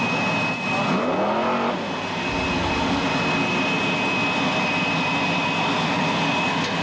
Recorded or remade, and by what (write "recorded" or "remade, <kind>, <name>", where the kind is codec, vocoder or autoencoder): recorded